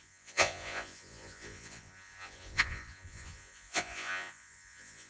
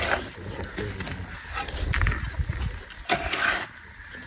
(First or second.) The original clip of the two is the second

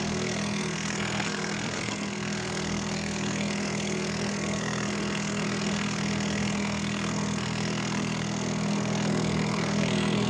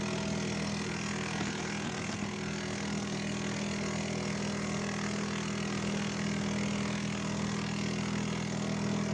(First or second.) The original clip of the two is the second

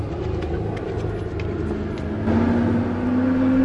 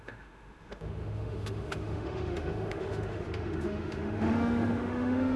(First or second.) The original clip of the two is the first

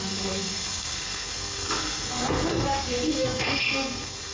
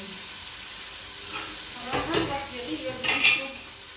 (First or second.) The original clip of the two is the second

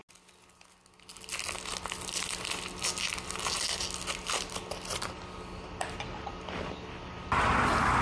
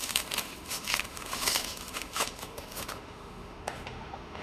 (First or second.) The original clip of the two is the first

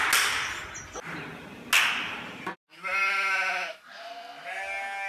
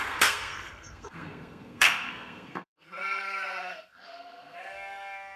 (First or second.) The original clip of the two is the first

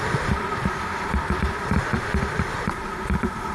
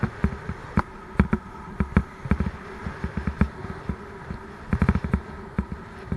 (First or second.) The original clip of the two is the second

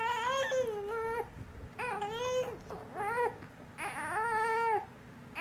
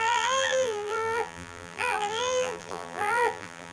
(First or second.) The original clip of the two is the first